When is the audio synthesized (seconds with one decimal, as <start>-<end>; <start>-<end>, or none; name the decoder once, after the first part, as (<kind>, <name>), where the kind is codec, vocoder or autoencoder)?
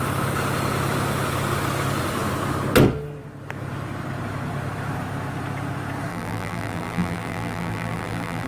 6.1-8.5 (vocoder, BigVGAN v2)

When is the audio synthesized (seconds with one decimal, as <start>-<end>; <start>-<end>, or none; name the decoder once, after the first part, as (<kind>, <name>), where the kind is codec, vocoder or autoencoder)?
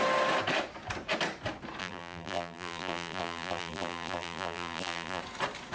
1.8-5.2 (vocoder, BigVGAN v2)